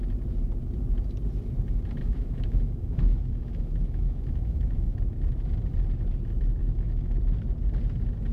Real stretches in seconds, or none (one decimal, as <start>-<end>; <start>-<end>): 0.0-2.0; 5.0-6.6; 7.2-8.3